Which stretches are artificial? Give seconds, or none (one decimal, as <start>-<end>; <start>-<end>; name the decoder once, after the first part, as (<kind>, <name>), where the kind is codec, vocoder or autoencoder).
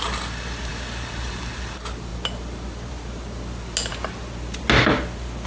none